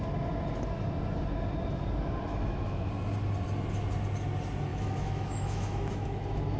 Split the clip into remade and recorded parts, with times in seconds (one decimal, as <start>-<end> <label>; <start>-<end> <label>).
0.0-2.3 recorded; 2.3-2.9 remade; 2.9-4.7 recorded; 4.7-6.6 remade